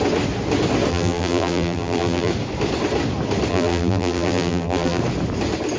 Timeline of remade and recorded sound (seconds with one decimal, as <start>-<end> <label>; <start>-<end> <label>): 0.0-0.9 recorded; 0.9-2.3 remade; 2.3-3.5 recorded; 3.5-5.0 remade; 5.0-5.8 recorded